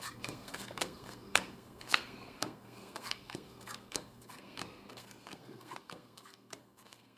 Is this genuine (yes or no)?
no